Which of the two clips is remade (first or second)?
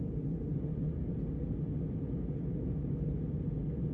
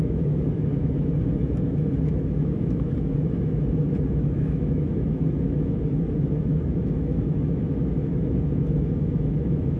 second